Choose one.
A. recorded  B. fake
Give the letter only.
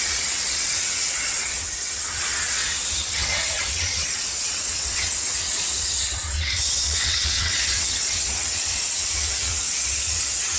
B